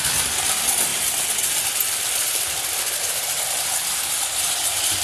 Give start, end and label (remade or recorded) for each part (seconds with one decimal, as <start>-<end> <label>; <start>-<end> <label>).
0.0-0.9 recorded; 0.9-3.9 remade; 3.9-5.0 recorded